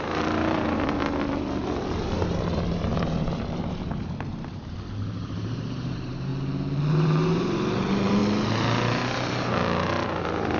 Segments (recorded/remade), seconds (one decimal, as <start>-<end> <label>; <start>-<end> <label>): 0.0-1.0 remade; 1.0-1.8 recorded; 1.8-6.3 remade; 6.3-6.9 recorded; 6.9-8.2 remade; 8.2-10.6 recorded